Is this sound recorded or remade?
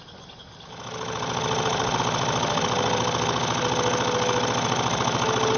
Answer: recorded